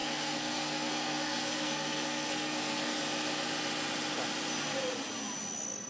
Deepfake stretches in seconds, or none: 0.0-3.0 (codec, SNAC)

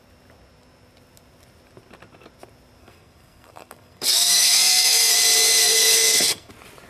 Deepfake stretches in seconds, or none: 2.8-5.1 (codec, SNAC); 5.6-6.5

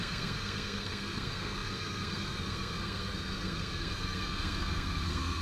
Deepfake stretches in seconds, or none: 0.0-5.4 (codec, SNAC)

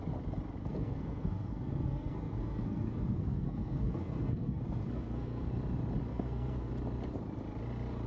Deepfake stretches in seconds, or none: 0.6-5.5 (codec, SNAC); 6.1-6.7

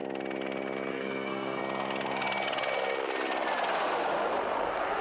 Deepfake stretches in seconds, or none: 0.9-1.6 (codec, SNAC); 4.6-5.0

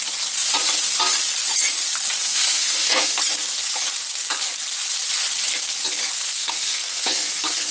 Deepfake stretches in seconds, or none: 2.2-3.2 (codec, SNAC); 6.3-7.7